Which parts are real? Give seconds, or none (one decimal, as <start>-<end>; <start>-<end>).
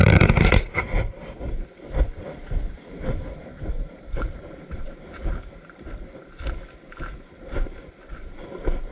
0.9-3.4; 6.3-7.1; 8.1-8.9